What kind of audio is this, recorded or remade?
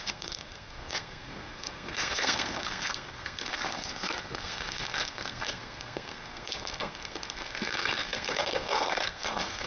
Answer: remade